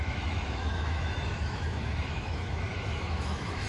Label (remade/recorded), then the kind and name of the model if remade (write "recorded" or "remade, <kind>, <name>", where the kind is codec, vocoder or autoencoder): remade, autoencoder, DAC-VAE